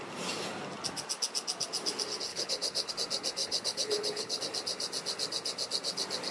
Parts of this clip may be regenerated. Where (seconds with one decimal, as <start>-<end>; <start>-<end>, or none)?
2.3-2.9; 3.4-4.4